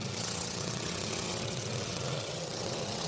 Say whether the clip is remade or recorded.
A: remade